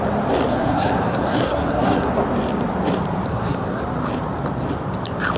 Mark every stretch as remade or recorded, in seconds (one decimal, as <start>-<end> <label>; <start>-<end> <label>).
0.0-0.5 recorded; 0.5-2.1 remade; 2.1-3.3 recorded; 3.3-3.8 remade; 3.8-5.4 recorded